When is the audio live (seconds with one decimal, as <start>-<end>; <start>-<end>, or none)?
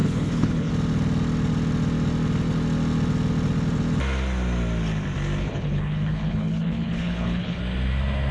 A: 0.7-5.4; 7.6-8.3